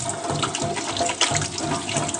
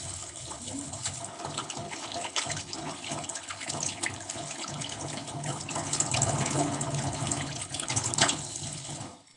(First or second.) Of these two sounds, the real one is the first